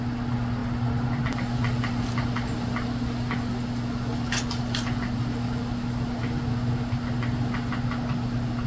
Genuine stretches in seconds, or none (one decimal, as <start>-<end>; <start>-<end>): 0.0-8.7